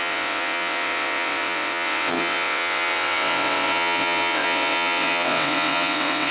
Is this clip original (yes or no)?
no